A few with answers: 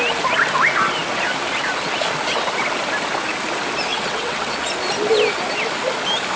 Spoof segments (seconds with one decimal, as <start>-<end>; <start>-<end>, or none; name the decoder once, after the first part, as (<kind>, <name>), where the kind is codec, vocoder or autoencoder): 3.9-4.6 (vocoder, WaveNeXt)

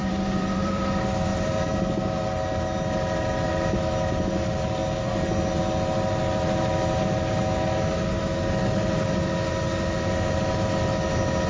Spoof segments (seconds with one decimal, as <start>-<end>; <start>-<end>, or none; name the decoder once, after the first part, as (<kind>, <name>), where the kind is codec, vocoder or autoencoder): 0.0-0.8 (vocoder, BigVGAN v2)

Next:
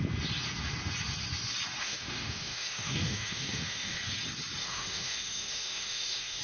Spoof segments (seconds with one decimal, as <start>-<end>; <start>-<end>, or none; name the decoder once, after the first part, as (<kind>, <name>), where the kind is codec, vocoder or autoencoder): 1.8-4.0 (autoencoder, DAC-VAE); 4.6-6.4